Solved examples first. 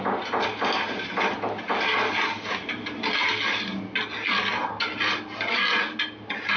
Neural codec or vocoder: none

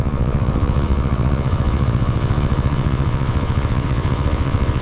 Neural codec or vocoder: vocoder, WaveNeXt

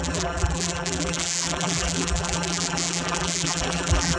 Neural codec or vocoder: vocoder, BigVGAN v2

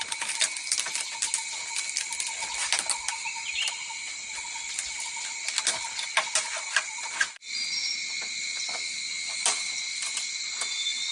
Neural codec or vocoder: none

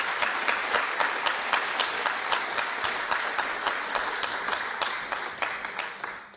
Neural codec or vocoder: none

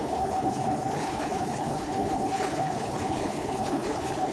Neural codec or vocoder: codec, HILCodec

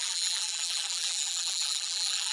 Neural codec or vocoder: vocoder, BigVGAN v2